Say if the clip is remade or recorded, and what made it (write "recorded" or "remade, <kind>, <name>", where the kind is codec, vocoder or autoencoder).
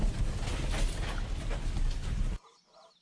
recorded